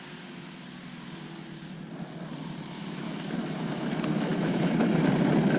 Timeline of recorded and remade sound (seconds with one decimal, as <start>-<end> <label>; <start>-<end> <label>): 0.0-2.8 recorded; 2.8-3.6 remade; 3.6-4.3 recorded; 4.3-5.1 remade; 5.1-5.6 recorded